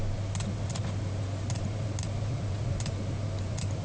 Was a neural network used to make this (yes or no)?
no